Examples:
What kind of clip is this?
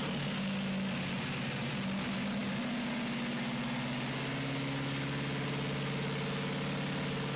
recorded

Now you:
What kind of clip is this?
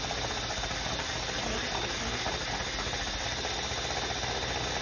recorded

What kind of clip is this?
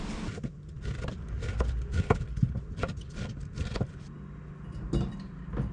recorded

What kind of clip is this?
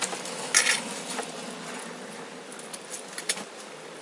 recorded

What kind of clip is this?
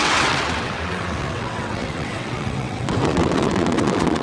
remade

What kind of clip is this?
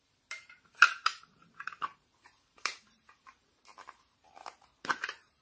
remade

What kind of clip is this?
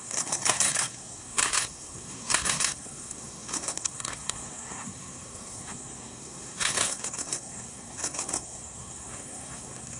remade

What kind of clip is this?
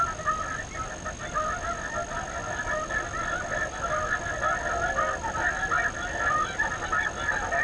recorded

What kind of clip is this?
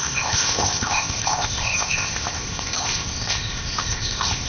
remade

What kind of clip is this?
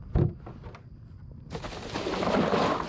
recorded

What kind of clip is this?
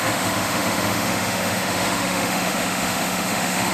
remade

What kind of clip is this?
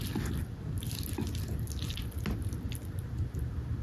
recorded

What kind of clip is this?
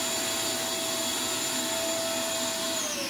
recorded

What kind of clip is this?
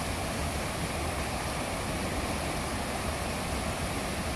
recorded